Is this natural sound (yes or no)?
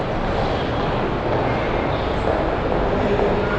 yes